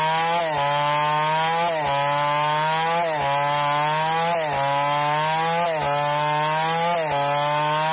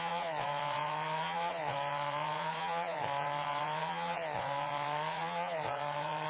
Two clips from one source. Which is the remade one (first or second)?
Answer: second